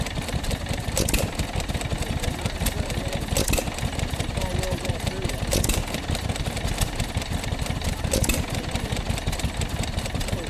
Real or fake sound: real